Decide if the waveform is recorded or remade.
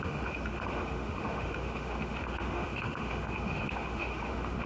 remade